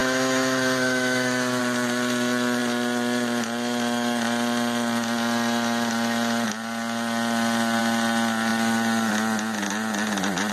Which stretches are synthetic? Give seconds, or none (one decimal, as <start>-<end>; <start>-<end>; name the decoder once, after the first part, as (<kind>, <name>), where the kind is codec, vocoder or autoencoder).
0.0-1.6 (autoencoder, DAC-VAE)